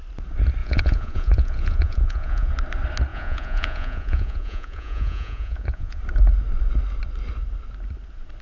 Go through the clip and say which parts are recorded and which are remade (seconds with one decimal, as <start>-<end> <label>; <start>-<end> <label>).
0.0-0.6 recorded; 0.6-2.5 remade; 2.5-3.1 recorded; 3.1-6.0 remade; 6.0-8.4 recorded